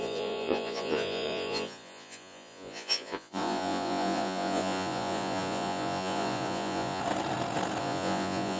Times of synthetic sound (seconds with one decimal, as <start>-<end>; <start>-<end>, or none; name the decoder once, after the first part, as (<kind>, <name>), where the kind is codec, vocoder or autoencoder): 0.0-7.0 (vocoder, Vocos); 7.8-8.6